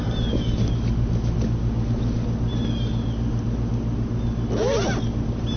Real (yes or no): yes